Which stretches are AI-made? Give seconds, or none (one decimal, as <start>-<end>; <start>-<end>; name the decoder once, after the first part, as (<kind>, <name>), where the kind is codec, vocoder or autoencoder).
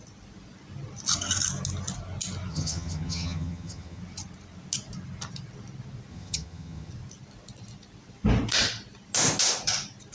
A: 2.5-4.0 (vocoder, HiFi-GAN); 6.1-6.9